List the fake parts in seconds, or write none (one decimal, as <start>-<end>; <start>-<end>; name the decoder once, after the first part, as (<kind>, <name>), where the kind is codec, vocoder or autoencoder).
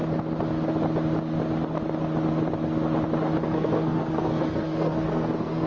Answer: 3.4-5.7 (codec, SNAC)